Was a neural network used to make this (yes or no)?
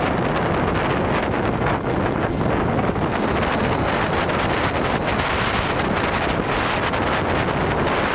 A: no